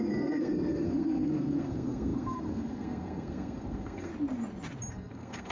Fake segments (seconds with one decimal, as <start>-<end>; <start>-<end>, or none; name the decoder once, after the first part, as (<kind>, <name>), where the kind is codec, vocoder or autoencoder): 0.0-4.1 (codec, SNAC); 4.9-5.5